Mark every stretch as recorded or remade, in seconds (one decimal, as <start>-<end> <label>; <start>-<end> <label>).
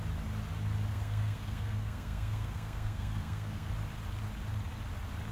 0.0-0.9 recorded; 0.9-3.7 remade; 3.7-5.3 recorded